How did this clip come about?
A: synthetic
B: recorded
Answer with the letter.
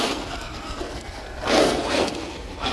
A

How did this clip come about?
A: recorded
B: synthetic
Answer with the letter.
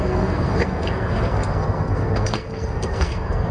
B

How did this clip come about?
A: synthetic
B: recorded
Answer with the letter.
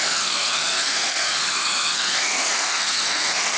A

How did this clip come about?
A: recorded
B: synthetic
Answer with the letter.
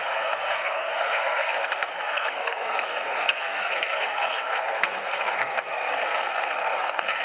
B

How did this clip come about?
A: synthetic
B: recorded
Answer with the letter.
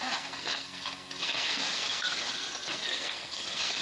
A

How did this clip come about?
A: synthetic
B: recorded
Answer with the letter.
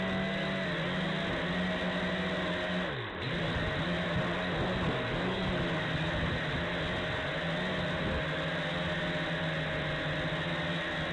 B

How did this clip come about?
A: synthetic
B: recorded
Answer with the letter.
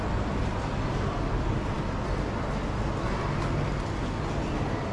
B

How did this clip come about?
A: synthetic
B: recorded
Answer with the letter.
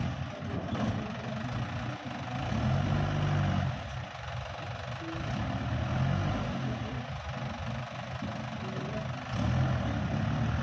B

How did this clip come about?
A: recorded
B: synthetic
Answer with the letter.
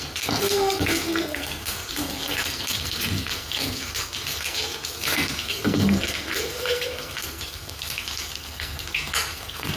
B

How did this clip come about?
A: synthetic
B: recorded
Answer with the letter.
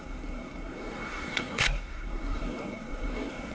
A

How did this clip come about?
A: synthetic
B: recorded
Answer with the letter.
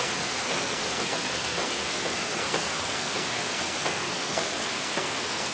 A